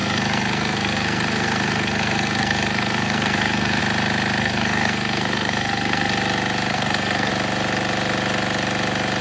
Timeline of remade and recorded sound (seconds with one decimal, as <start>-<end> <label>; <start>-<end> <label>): 0.0-3.8 remade; 3.8-4.4 recorded; 4.4-6.1 remade; 6.1-6.7 recorded; 6.7-7.3 remade; 7.3-9.2 recorded